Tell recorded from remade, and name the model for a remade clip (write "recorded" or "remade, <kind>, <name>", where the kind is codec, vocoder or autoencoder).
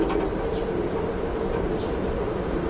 remade, vocoder, BigVGAN v2